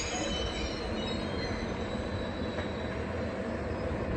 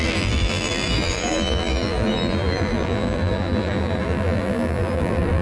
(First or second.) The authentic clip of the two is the first